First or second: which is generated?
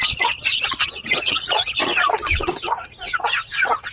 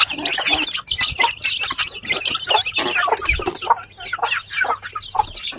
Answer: first